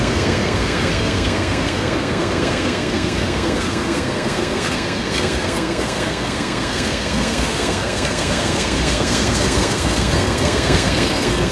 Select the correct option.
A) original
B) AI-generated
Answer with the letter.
B